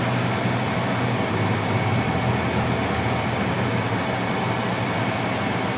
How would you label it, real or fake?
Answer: real